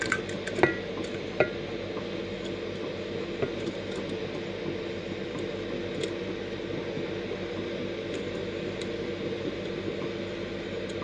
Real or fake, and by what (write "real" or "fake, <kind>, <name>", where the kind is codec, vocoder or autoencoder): real